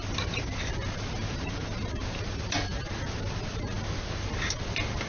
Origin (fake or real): real